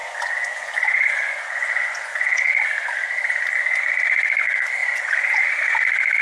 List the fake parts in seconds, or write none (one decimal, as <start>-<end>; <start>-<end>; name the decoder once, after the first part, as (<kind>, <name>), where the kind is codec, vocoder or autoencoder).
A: 0.0-2.5 (vocoder, Vocos); 4.8-5.4